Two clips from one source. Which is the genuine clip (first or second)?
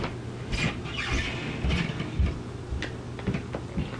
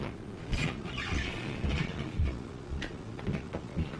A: first